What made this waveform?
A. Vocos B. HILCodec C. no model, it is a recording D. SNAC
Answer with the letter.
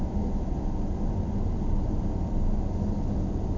C